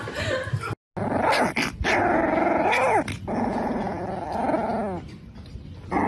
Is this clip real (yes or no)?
yes